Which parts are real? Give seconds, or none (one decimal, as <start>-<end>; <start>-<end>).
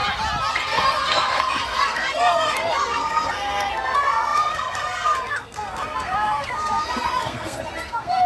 0.0-0.5